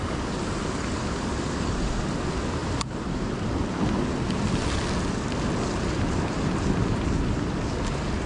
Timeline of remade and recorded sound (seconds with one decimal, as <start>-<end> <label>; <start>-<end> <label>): 0.0-8.3 recorded